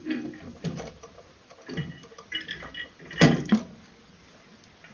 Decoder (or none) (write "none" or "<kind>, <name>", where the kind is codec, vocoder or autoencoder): none